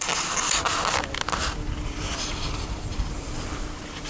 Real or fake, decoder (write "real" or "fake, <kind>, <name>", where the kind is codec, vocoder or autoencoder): real